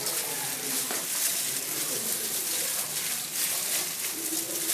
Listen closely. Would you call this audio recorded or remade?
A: recorded